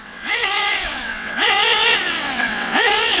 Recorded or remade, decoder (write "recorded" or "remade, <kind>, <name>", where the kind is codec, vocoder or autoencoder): remade, vocoder, WaveNeXt